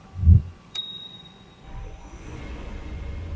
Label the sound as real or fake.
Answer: fake